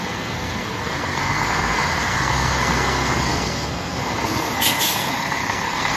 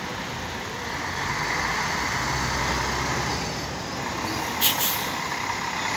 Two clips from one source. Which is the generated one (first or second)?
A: first